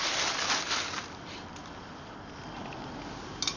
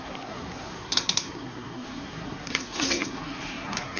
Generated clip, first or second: second